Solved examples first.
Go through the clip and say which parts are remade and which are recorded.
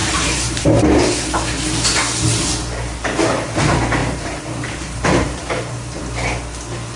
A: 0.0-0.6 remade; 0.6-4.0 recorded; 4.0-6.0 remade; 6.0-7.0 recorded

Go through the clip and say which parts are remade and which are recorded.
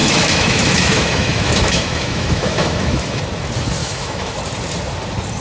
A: 0.0-3.2 remade; 3.2-3.8 recorded; 3.8-4.4 remade; 4.4-5.4 recorded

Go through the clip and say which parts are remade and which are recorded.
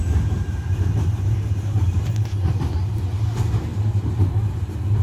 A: 0.0-3.0 remade; 3.0-3.7 recorded; 3.7-4.3 remade; 4.3-5.0 recorded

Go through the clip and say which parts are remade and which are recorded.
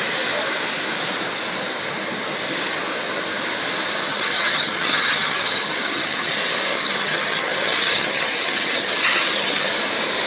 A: 0.0-4.1 recorded; 4.1-6.3 remade; 6.3-6.7 recorded; 6.7-9.7 remade; 9.7-10.3 recorded